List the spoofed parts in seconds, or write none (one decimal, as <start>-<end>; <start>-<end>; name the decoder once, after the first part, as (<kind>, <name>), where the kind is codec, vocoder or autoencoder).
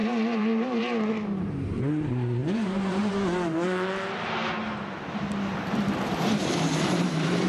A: 0.0-4.4 (vocoder, BigVGAN v2); 6.2-7.5